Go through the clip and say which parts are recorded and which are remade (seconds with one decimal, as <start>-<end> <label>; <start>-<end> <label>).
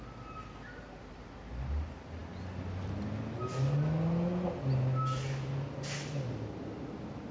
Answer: 0.0-7.3 recorded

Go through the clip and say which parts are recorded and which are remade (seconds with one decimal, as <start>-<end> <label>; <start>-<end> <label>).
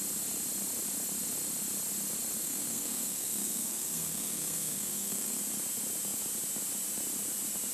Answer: 0.0-2.4 recorded; 2.4-5.4 remade; 5.4-7.7 recorded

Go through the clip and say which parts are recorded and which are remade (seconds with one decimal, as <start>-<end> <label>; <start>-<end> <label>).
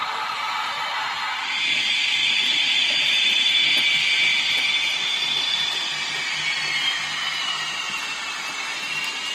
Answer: 0.0-0.9 remade; 0.9-2.2 recorded; 2.2-3.4 remade; 3.4-4.3 recorded; 4.3-5.2 remade; 5.2-9.3 recorded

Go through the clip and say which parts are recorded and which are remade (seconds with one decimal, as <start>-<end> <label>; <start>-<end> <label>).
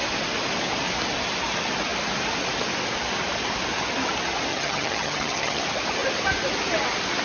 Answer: 0.0-4.5 recorded; 4.5-5.6 remade; 5.6-7.2 recorded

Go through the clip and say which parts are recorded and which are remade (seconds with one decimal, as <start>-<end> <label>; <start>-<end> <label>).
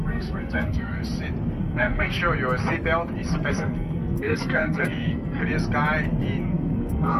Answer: 0.0-1.0 remade; 1.0-1.6 recorded; 1.6-2.2 remade; 2.2-3.5 recorded; 3.5-5.4 remade; 5.4-6.4 recorded; 6.4-7.2 remade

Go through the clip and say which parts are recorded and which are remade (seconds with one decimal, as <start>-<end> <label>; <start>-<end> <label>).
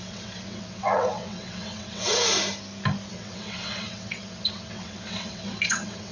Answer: 0.0-2.2 remade; 2.2-3.1 recorded; 3.1-6.1 remade